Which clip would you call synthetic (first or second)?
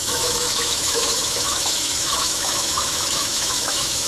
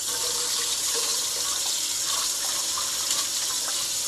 first